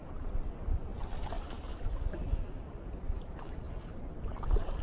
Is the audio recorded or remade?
recorded